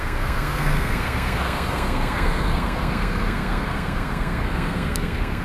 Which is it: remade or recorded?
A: remade